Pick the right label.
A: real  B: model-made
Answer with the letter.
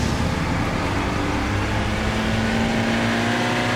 A